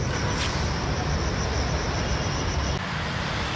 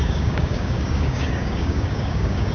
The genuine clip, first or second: first